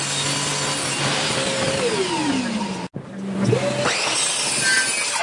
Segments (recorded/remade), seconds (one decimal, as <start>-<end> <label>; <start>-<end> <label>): 0.0-5.2 recorded